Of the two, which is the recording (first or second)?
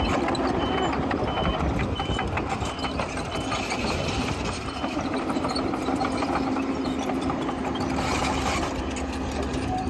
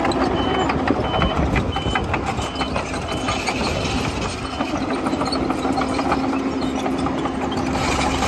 second